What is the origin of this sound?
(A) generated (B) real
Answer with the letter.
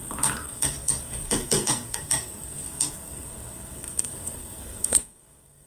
A